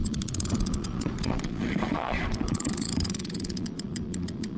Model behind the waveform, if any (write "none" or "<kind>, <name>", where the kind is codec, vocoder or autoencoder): vocoder, Vocos